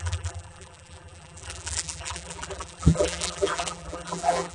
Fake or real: fake